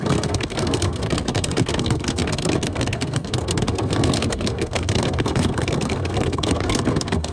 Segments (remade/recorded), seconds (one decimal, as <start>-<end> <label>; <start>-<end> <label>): 0.0-7.3 remade